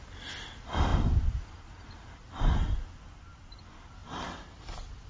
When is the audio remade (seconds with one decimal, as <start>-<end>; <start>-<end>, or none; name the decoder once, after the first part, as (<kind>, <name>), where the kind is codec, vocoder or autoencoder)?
none

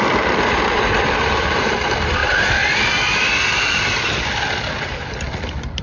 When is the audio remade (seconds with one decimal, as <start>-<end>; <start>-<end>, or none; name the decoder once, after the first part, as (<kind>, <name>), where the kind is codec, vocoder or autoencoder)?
0.0-2.2 (vocoder, BigVGAN v2); 3.6-5.8

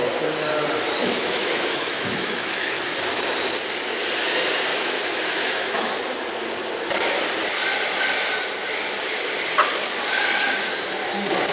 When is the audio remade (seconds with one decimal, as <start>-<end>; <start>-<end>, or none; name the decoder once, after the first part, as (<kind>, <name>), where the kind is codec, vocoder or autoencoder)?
1.0-2.8 (autoencoder, DAC-VAE); 4.7-6.0

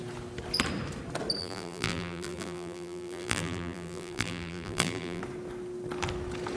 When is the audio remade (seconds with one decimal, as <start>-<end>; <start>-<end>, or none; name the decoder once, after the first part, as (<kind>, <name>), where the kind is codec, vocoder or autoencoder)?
1.4-5.2 (vocoder, BigVGAN v2)

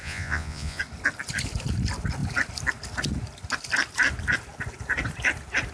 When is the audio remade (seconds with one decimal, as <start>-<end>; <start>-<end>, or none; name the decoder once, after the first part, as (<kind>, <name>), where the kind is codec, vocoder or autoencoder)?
0.0-0.8 (vocoder, Vocos)

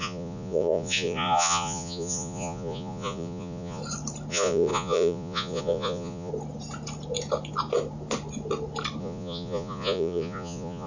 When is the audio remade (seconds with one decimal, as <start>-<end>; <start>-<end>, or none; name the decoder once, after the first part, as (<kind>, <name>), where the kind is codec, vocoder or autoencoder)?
0.0-3.8 (vocoder, Vocos); 4.3-6.3; 9.0-10.9

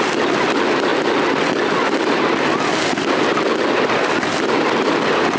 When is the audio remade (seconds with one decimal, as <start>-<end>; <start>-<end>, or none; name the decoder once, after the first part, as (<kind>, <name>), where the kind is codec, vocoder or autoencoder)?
none